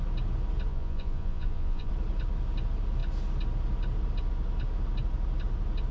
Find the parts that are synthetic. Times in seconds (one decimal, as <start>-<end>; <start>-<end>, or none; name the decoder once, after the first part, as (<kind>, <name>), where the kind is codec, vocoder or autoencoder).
0.7-1.9 (vocoder, Vocos)